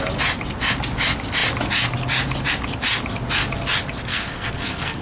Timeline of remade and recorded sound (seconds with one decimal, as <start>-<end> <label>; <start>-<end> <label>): 0.0-4.1 recorded; 4.1-5.0 remade